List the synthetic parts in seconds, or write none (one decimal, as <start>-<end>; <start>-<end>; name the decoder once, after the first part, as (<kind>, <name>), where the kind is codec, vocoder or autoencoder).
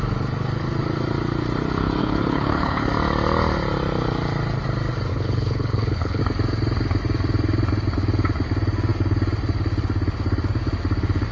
2.0-2.9 (codec, HILCodec); 5.1-6.2